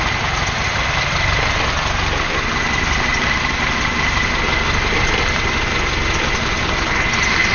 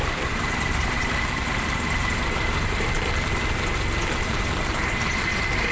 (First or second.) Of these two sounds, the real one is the first